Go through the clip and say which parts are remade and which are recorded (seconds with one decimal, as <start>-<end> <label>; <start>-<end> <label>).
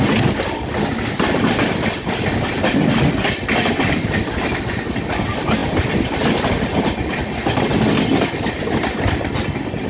0.0-5.6 recorded; 5.6-6.5 remade; 6.5-9.9 recorded